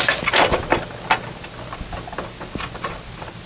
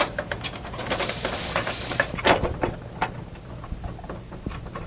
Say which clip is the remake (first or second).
second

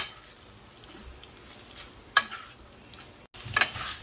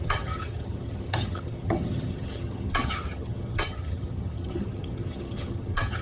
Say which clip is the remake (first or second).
second